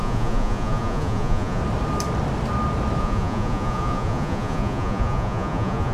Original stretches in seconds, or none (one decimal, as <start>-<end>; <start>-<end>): 1.6-3.0